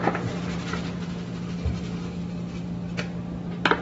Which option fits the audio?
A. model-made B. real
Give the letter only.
B